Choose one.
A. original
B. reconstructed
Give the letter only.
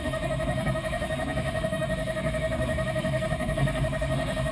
B